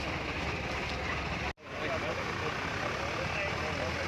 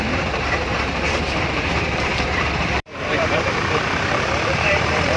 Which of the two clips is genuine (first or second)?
first